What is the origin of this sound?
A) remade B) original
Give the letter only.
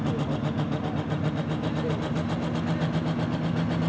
B